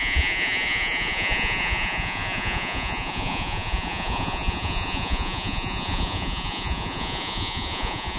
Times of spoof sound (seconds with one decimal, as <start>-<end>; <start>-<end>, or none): 0.0-8.2